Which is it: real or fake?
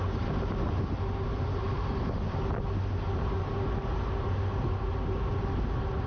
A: real